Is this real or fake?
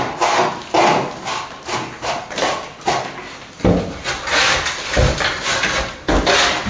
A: real